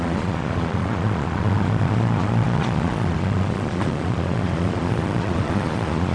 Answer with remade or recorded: remade